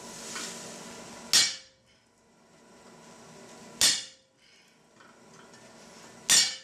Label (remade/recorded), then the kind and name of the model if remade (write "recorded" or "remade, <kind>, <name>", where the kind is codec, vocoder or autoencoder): recorded